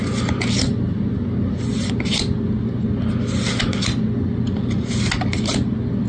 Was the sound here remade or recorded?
recorded